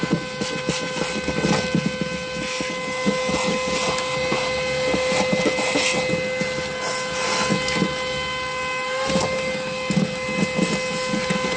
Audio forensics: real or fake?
real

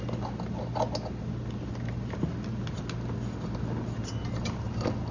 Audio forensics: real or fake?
real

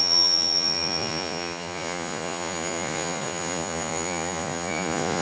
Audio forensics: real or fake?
fake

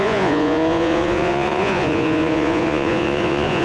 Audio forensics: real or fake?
fake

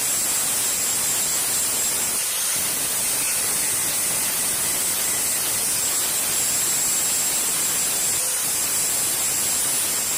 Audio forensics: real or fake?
real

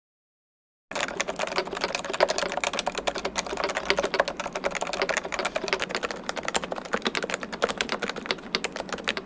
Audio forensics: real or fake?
real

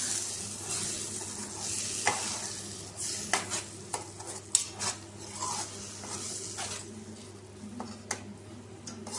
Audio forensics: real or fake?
real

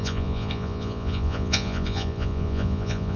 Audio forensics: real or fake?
fake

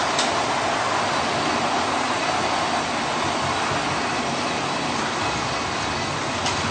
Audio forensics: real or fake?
real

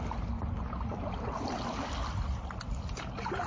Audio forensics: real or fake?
real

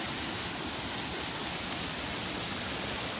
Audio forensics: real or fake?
real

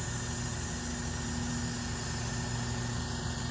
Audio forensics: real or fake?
real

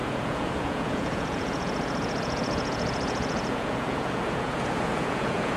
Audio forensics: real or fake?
fake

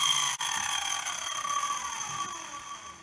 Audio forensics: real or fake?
real